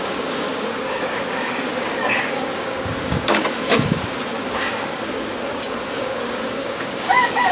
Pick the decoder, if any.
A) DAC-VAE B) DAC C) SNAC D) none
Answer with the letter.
B